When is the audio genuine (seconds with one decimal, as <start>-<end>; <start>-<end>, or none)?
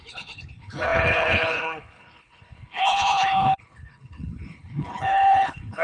none